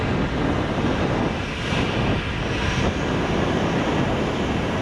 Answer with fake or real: real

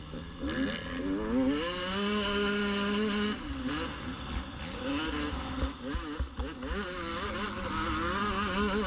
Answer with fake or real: real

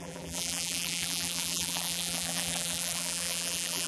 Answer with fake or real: fake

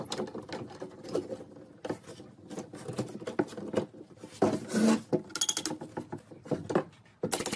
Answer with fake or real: real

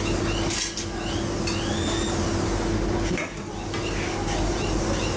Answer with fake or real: real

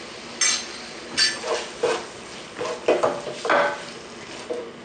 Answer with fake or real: real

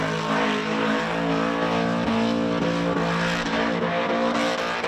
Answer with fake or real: real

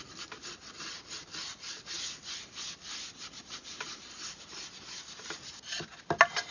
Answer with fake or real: real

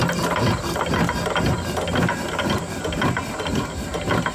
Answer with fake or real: real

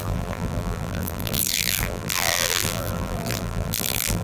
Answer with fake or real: fake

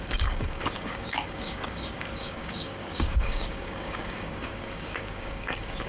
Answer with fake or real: fake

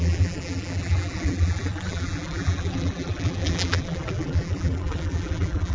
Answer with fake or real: fake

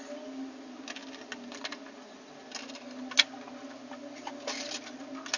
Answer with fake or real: real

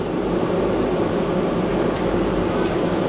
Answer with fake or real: real